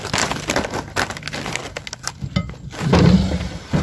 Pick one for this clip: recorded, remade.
recorded